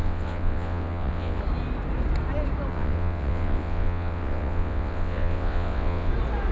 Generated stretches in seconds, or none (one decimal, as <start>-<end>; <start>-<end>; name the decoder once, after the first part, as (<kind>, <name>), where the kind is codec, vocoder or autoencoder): 0.0-1.4 (vocoder, WaveNeXt); 2.7-6.1